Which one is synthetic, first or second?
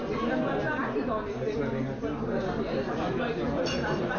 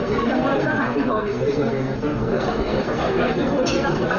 second